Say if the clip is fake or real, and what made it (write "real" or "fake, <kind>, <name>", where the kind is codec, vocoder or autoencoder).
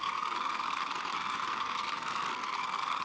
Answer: fake, codec, SNAC